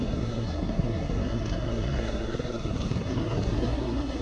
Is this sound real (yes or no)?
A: no